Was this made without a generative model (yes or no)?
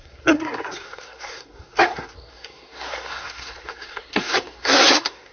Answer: no